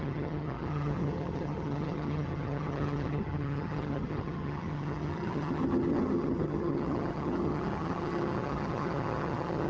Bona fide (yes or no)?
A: no